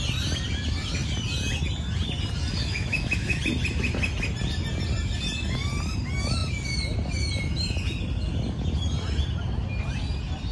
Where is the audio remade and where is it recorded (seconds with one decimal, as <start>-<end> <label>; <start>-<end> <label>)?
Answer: 0.0-2.6 recorded; 2.6-3.4 remade; 3.4-10.5 recorded